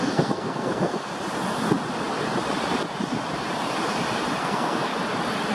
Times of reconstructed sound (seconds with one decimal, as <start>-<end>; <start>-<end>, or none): 0.0-1.1; 4.4-4.9